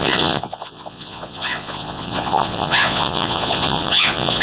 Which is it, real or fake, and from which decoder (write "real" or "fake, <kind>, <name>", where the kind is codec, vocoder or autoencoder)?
fake, vocoder, Vocos